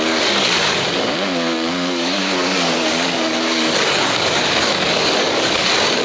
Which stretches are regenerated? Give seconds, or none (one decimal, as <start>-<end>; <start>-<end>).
0.0-6.0